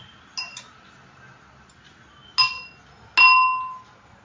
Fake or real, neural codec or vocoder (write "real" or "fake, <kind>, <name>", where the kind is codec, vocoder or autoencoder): real